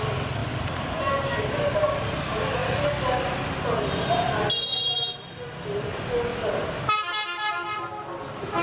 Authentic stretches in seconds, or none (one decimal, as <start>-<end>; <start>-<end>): 0.0-6.3; 7.1-8.6